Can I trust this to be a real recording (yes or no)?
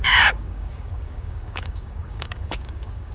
no